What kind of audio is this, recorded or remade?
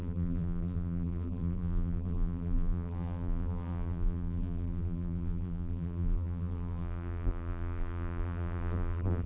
remade